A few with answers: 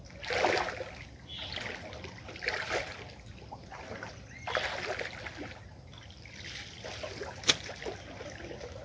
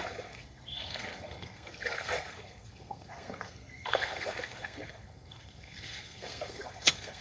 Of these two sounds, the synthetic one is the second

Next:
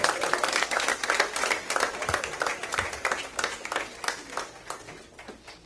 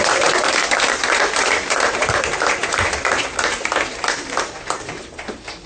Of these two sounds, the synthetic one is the second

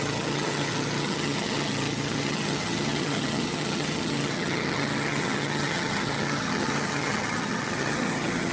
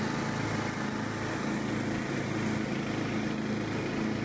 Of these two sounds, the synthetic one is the first